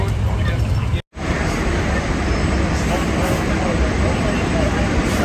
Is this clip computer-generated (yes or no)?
no